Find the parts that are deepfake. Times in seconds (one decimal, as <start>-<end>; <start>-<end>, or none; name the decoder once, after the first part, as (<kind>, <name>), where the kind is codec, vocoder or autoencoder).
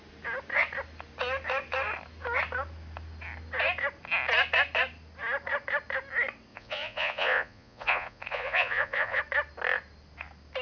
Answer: 6.5-9.2 (vocoder, Vocos)